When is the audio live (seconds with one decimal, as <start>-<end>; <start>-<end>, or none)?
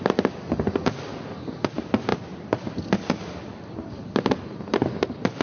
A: 0.0-2.1; 3.7-5.4